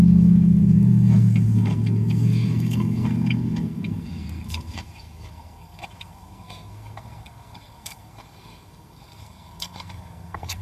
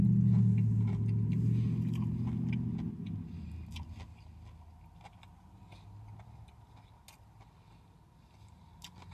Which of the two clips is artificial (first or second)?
first